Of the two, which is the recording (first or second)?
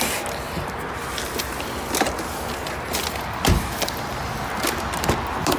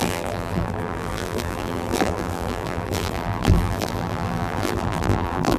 first